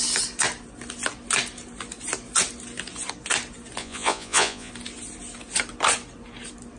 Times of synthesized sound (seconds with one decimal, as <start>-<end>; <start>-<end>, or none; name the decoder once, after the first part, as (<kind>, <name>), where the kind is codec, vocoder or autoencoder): 3.8-4.7 (vocoder, Vocos)